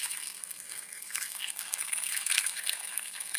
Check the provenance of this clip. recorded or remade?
remade